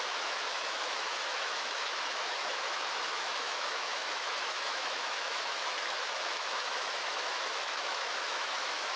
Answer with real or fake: fake